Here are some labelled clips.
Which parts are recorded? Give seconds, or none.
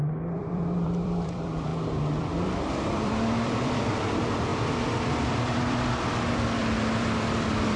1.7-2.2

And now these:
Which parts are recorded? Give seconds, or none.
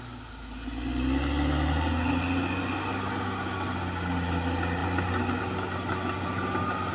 0.0-6.9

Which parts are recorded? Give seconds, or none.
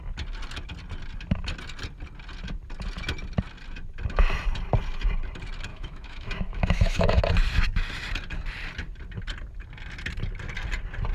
0.0-5.7; 7.2-11.1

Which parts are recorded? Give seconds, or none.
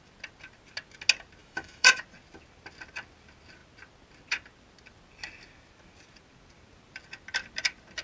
0.0-1.4; 2.0-8.0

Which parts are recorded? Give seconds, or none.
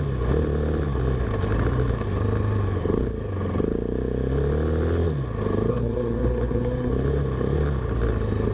0.0-5.7; 6.9-8.5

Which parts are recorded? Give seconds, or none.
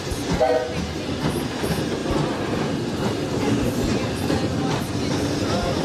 0.0-5.8